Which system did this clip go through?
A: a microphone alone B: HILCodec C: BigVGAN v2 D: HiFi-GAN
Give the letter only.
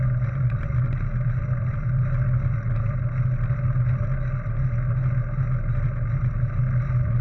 A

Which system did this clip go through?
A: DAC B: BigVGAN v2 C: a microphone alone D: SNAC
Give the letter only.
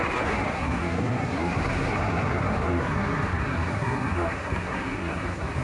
D